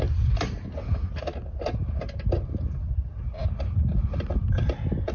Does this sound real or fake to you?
real